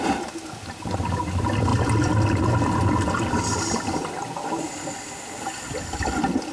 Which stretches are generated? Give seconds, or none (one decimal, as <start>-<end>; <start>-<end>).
none